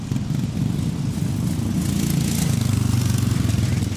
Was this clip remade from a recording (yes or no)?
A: no